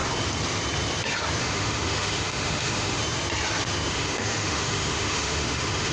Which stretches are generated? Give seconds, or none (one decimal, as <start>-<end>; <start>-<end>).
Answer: 1.4-3.0; 3.9-5.9